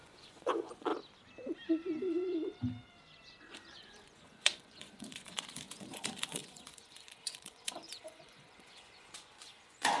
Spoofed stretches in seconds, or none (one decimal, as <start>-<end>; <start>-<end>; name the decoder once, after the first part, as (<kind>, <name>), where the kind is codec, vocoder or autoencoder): 0.0-0.9 (vocoder, Vocos); 3.4-10.0

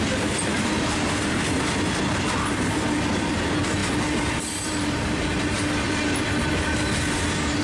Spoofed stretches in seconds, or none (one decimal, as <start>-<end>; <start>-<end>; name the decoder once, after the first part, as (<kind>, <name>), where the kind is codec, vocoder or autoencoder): none

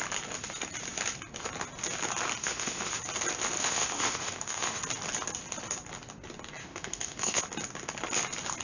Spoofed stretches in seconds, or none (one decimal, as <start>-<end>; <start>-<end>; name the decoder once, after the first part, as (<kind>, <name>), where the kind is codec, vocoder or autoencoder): 2.4-3.0 (autoencoder, DAC-VAE); 3.6-4.8; 6.6-7.4

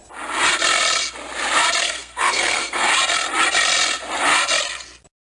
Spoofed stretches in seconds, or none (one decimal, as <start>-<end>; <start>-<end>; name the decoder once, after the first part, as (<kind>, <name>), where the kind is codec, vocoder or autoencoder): 1.8-2.9 (codec, SNAC)

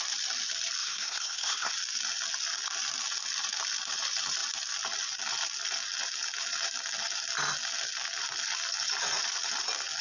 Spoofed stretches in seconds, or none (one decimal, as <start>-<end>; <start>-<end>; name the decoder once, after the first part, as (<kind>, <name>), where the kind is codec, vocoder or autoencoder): 0.8-1.7 (codec, SNAC)